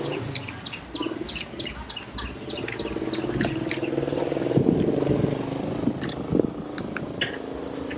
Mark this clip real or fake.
real